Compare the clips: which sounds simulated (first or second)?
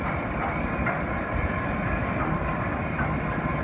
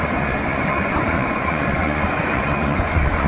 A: second